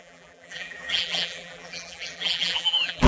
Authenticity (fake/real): fake